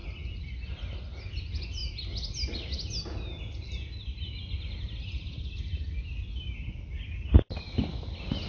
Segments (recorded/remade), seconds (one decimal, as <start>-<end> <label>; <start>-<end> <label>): 0.0-8.5 recorded